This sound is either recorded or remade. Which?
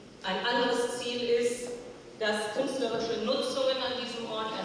recorded